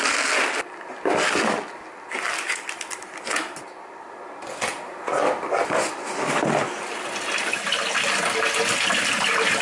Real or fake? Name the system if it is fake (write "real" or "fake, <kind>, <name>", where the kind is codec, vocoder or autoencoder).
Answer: real